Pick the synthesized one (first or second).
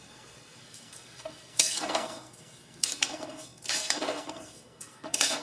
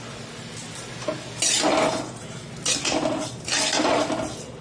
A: first